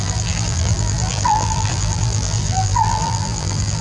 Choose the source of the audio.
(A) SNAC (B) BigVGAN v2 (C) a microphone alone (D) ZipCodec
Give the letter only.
B